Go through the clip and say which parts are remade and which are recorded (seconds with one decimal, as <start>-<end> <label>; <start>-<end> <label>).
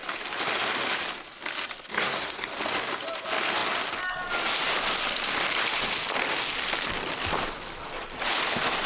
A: 0.0-1.9 recorded; 1.9-2.5 remade; 2.5-8.9 recorded